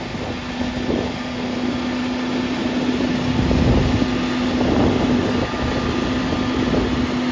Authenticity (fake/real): real